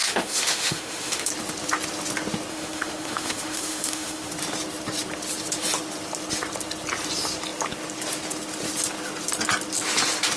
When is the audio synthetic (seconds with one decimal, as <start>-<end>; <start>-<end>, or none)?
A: 0.0-1.3; 2.5-4.3